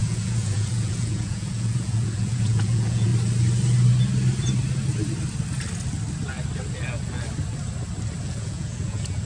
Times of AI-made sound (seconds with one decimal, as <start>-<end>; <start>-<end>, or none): 0.0-3.1; 8.2-9.2